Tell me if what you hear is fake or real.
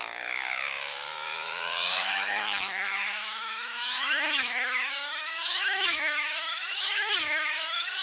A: fake